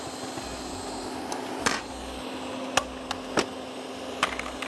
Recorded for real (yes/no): yes